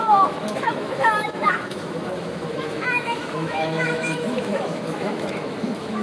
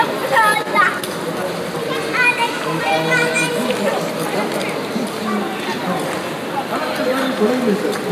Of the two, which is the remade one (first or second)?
first